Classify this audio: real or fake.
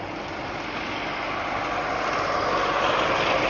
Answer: real